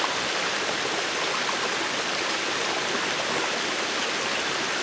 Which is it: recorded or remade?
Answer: recorded